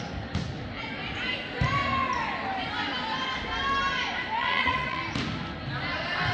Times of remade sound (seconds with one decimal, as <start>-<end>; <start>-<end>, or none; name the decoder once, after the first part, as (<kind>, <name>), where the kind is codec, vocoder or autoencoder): 4.4-5.0 (vocoder, Vocos)